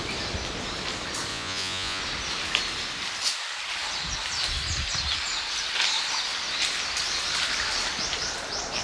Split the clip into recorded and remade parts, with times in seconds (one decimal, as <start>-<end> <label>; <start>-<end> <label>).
0.0-1.3 recorded; 1.3-2.0 remade; 2.0-8.8 recorded